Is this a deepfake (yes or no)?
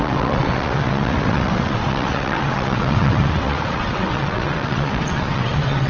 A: yes